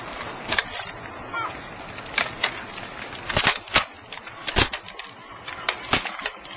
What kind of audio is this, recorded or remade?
recorded